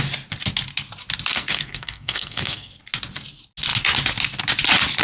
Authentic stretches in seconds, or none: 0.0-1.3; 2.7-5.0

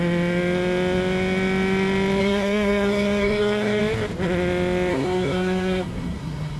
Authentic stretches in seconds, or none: 0.0-2.2; 3.8-4.9

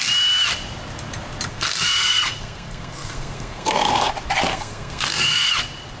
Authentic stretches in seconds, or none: 0.0-1.5; 4.1-4.5; 5.5-6.0